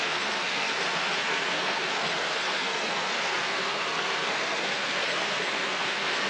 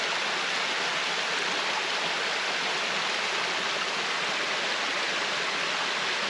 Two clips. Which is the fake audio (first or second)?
first